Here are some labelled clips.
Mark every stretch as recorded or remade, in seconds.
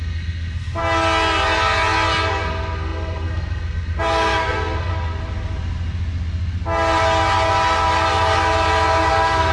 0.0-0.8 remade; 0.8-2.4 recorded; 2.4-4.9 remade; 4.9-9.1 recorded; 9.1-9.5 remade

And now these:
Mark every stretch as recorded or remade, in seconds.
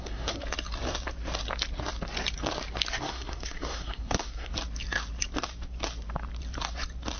0.0-0.4 remade; 0.4-3.0 recorded; 3.0-4.5 remade; 4.5-7.2 recorded